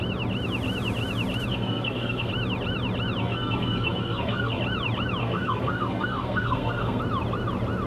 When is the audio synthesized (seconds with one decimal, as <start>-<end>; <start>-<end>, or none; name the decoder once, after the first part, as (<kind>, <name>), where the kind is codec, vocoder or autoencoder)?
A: 1.5-2.3 (codec, SNAC); 3.2-4.6; 5.2-7.0

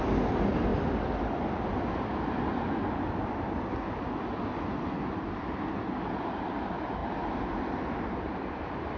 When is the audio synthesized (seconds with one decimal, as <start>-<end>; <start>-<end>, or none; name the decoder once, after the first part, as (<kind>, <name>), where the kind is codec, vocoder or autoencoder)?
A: 0.0-0.7 (vocoder, BigVGAN v2); 5.6-7.0; 8.0-9.0

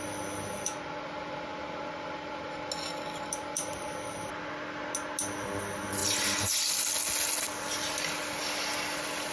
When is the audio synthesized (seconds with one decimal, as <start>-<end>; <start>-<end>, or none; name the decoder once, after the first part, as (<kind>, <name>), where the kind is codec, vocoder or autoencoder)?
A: none